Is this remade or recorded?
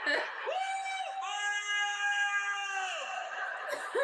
recorded